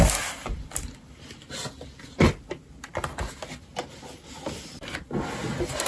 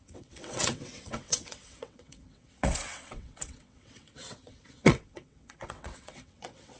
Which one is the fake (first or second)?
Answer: second